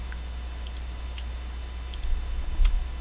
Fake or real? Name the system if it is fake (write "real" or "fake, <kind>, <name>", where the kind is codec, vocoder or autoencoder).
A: real